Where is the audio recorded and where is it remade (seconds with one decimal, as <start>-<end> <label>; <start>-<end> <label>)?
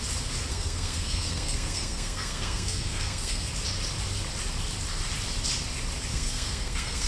0.0-0.5 recorded; 0.5-3.5 remade; 3.5-6.1 recorded; 6.1-7.1 remade